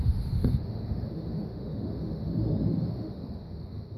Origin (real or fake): fake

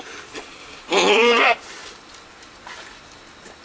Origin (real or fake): real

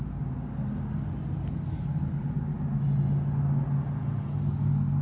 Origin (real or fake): real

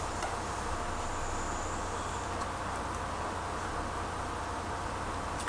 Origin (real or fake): real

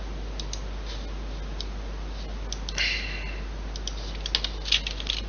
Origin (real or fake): real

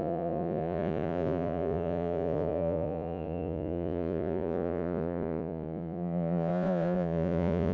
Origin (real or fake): fake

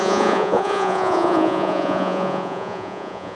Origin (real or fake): fake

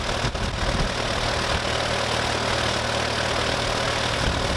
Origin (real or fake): real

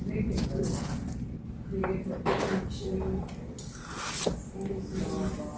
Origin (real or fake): real